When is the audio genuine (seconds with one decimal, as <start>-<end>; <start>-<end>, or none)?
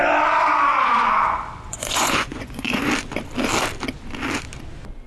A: 0.0-0.7; 2.9-5.1